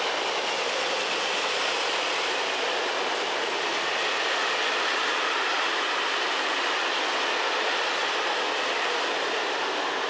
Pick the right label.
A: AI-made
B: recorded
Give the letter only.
B